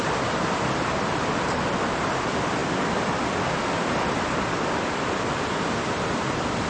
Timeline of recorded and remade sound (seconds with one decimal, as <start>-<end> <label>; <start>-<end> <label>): 0.0-6.7 recorded